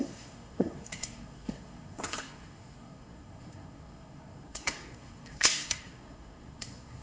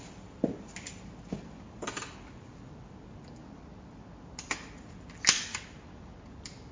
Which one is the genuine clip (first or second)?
second